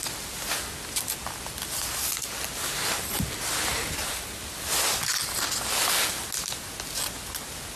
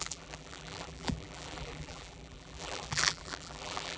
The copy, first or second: second